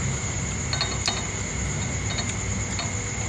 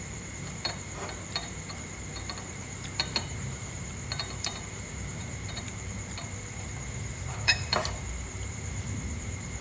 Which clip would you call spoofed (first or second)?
second